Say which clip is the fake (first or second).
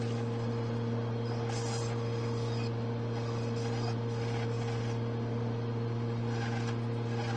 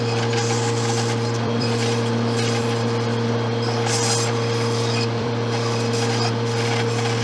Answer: second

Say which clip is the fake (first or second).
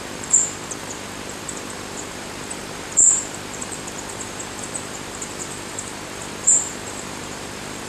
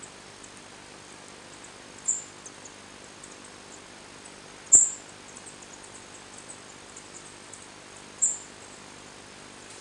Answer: first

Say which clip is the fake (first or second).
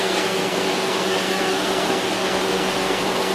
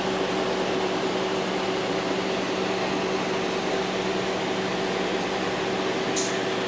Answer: first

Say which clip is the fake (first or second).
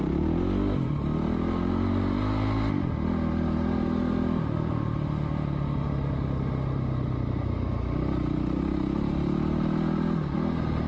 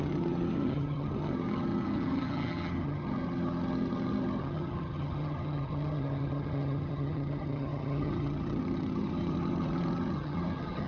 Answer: second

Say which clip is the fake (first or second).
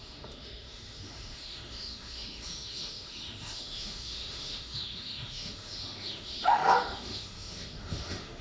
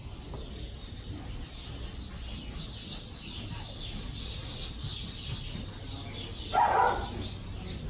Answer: first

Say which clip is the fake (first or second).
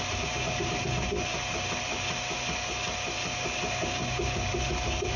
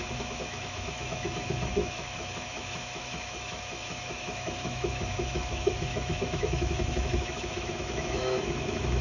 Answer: second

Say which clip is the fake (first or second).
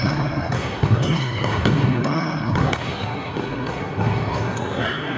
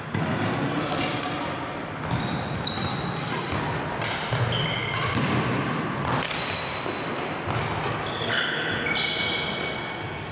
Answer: first